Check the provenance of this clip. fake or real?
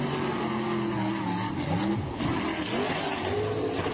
real